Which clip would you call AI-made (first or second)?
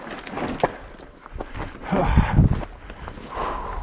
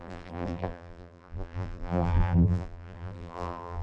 second